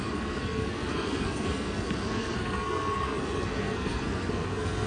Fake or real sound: fake